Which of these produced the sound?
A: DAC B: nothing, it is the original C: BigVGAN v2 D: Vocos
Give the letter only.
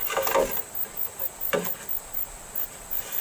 B